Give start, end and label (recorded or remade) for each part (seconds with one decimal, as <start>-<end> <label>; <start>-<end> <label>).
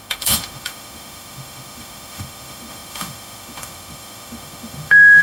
0.0-5.2 remade